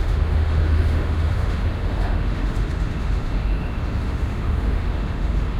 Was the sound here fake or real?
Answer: fake